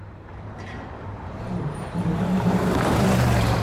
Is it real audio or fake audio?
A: fake